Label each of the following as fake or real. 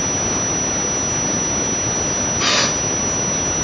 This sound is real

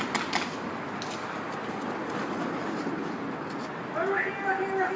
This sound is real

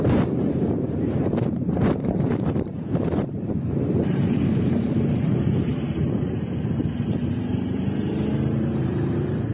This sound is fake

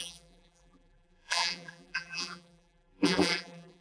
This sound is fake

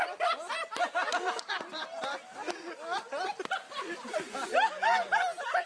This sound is real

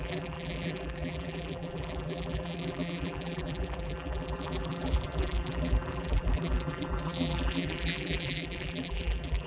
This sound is fake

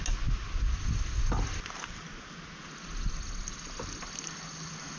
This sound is real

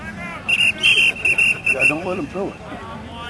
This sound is fake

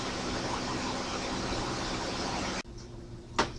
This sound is real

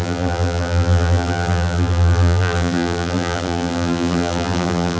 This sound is fake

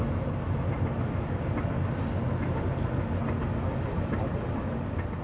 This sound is real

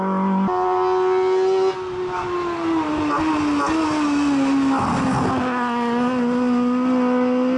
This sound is real